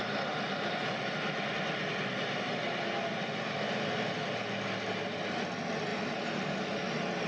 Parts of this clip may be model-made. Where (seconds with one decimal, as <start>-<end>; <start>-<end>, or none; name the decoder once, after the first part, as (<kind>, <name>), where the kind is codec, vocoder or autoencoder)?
5.9-6.8 (vocoder, BigVGAN v2)